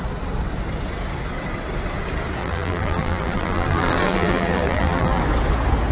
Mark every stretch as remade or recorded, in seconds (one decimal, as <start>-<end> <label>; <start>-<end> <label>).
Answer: 0.0-2.4 recorded; 2.4-5.2 remade; 5.2-5.9 recorded